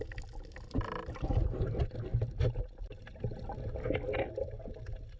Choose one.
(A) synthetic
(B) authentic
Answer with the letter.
B